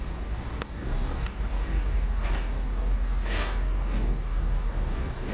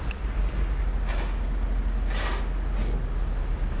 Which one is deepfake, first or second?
first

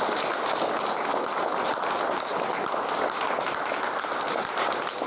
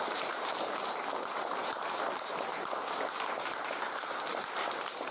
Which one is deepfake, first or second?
second